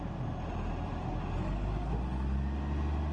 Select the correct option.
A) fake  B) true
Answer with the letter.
B